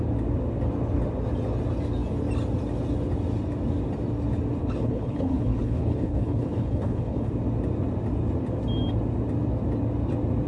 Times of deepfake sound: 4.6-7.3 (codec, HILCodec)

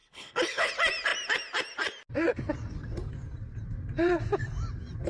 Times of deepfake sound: 0.0-0.7 (codec, HILCodec)

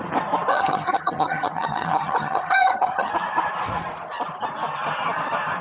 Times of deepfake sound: 0.5-3.1 (vocoder, HiFi-GAN)

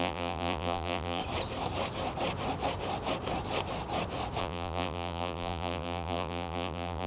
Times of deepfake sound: 0.0-1.2 (vocoder, BigVGAN v2); 4.4-7.1

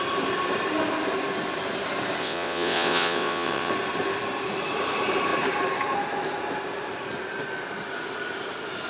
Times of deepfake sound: 2.2-3.7 (vocoder, WaveNeXt)

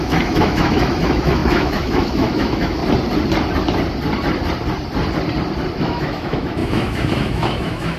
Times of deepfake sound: 0.0-2.8 (autoencoder, DAC-VAE); 5.8-8.0

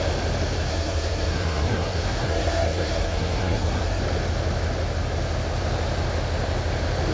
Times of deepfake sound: 0.7-4.0 (codec, SNAC)